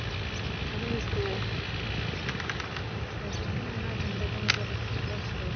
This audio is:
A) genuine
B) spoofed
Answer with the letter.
A